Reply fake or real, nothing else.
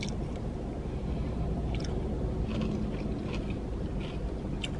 real